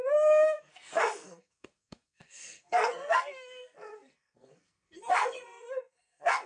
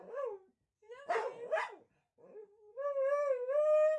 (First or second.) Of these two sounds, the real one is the second